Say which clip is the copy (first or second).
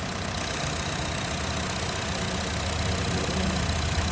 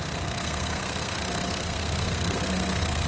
second